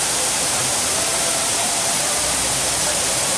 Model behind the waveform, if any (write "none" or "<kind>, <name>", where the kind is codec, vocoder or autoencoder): vocoder, BigVGAN v2